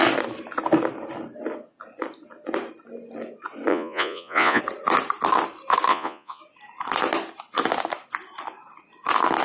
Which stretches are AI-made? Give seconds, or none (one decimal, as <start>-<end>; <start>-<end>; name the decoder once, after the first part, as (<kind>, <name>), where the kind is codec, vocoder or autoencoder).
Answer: 3.7-4.6 (vocoder, Vocos); 5.9-6.4